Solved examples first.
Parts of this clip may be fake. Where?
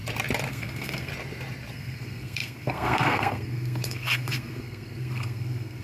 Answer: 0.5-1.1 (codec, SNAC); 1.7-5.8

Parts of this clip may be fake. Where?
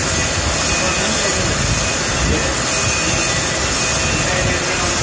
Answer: none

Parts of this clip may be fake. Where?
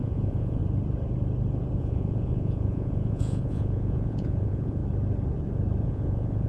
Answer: 0.0-0.6 (vocoder, Vocos); 1.8-4.8; 5.8-6.5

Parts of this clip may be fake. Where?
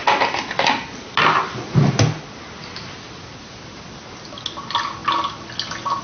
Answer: none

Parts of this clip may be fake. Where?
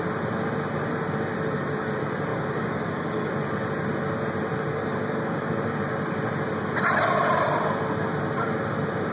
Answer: 2.3-3.3 (codec, DAC); 4.7-5.5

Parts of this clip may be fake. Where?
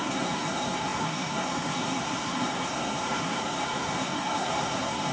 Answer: 0.0-5.1 (codec, SNAC)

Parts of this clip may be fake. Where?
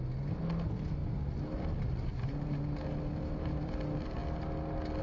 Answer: 2.1-3.7 (vocoder, BigVGAN v2)